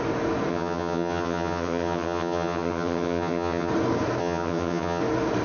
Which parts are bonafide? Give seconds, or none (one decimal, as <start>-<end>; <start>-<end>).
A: 0.0-0.5; 3.7-4.2; 5.0-5.4